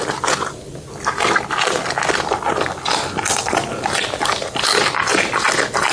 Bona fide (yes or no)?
yes